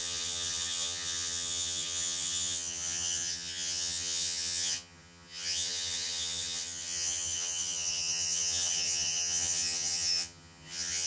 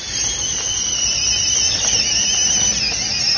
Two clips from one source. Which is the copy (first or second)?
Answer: first